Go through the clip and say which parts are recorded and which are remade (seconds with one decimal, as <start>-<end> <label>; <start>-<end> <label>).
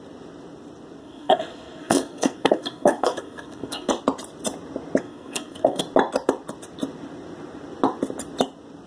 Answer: 0.0-1.0 recorded; 1.0-3.9 remade; 3.9-5.0 recorded; 5.0-5.8 remade; 5.8-8.9 recorded